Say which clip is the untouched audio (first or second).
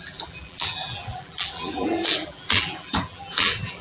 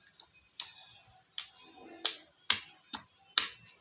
second